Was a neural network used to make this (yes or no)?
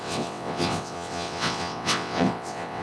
yes